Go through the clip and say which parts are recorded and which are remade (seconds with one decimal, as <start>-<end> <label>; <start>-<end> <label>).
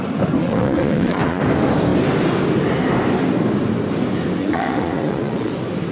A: 0.0-0.4 recorded; 0.4-1.4 remade; 1.4-4.4 recorded; 4.4-5.5 remade; 5.5-5.9 recorded